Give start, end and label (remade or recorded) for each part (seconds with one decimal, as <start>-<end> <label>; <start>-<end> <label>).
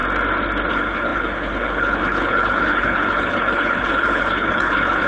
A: 0.0-0.7 recorded; 0.7-5.1 remade